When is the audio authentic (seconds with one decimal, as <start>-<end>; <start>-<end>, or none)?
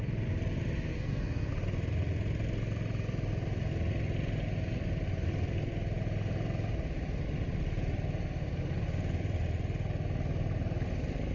0.0-0.9; 1.5-11.3